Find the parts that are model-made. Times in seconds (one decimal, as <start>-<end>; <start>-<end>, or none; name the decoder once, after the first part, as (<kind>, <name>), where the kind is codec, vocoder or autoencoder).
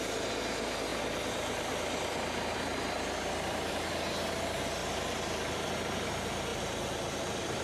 0.9-3.9 (vocoder, BigVGAN v2); 6.5-7.6